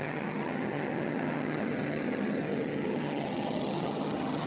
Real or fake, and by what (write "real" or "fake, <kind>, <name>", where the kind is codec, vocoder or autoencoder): fake, vocoder, HiFi-GAN